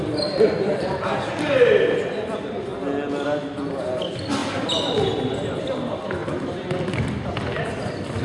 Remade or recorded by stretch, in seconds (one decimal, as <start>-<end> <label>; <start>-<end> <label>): 0.0-8.2 recorded